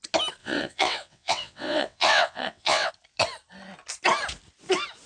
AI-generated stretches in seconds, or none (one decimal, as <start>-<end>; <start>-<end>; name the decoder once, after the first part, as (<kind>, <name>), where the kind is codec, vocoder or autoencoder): 0.4-2.9 (vocoder, WaveNeXt)